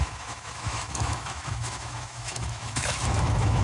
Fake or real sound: fake